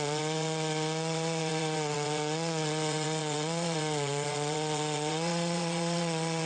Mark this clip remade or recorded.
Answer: remade